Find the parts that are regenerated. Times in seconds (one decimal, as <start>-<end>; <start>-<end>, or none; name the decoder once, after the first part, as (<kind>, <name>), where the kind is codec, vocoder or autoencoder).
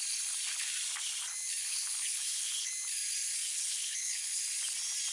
1.6-2.7 (codec, HILCodec); 3.5-4.4